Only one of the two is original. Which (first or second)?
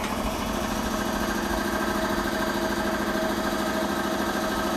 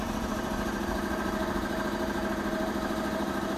first